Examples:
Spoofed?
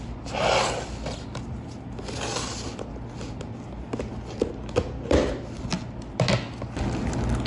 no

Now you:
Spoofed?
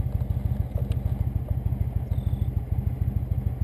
no